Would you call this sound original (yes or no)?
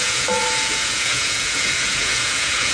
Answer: no